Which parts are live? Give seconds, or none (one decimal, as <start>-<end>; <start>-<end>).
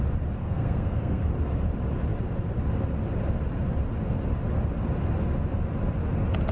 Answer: 0.0-0.4; 1.2-6.5